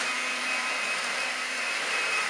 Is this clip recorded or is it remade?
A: remade